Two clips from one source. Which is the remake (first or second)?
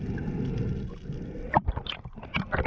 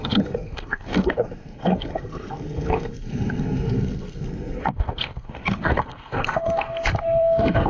second